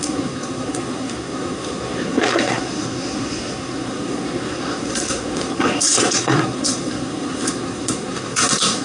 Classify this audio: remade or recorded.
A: remade